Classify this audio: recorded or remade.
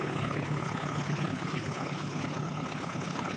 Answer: remade